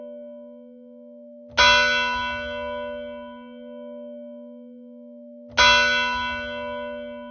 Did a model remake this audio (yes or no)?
no